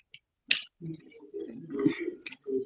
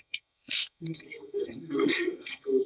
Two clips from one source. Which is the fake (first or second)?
second